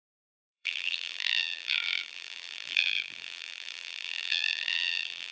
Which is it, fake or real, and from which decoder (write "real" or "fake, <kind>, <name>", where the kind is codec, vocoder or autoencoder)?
fake, vocoder, BigVGAN v2